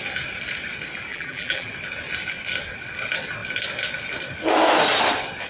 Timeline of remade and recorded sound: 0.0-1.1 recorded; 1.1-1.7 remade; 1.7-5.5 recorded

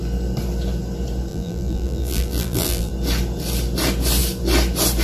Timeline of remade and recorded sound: 0.0-1.3 recorded; 1.3-2.9 remade; 2.9-5.0 recorded